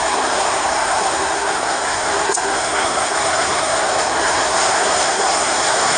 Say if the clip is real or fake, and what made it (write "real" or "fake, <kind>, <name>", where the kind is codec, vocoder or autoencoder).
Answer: fake, codec, SNAC